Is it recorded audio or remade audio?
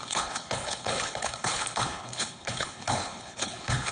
remade